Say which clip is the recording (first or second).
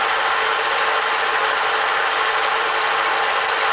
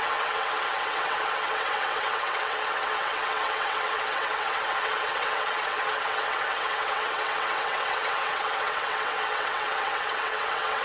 first